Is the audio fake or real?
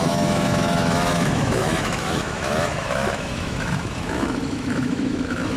fake